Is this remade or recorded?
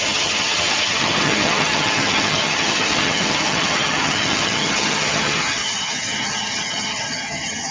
remade